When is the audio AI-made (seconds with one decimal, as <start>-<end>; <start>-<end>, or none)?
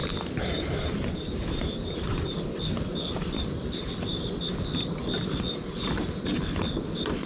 0.0-2.5